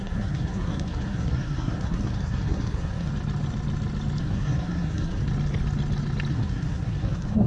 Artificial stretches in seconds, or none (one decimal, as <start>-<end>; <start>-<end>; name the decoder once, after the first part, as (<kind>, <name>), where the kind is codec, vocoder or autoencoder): 0.0-3.1 (codec, SNAC); 4.2-5.2; 6.3-7.5